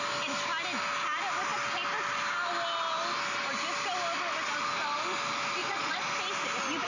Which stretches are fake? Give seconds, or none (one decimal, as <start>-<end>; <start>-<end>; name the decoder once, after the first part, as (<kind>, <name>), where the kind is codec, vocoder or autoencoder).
5.6-6.1 (vocoder, Vocos)

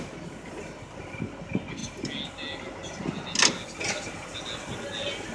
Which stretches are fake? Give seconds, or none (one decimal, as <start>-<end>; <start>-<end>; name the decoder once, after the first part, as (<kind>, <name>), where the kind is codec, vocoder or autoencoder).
none